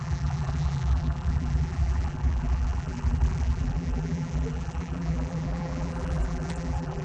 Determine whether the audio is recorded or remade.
remade